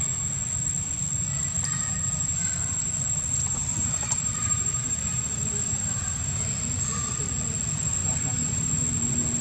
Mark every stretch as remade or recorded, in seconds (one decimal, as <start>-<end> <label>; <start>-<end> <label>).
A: 0.0-3.7 recorded; 3.7-6.4 remade; 6.4-8.0 recorded; 8.0-8.7 remade; 8.7-9.4 recorded